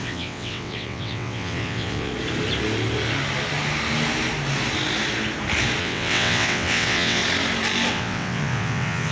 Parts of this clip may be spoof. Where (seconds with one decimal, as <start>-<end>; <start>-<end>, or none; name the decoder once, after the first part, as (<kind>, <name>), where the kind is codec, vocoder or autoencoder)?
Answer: 0.0-2.1 (vocoder, WaveNeXt); 5.8-7.2; 7.9-9.1